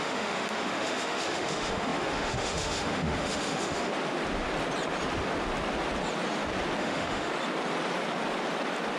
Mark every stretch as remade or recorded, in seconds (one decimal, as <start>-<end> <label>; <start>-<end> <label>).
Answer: 0.0-3.9 remade; 3.9-6.8 recorded; 6.8-7.3 remade; 7.3-9.0 recorded